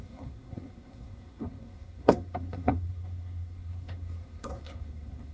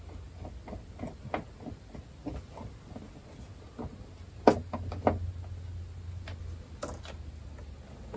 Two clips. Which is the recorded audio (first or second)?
second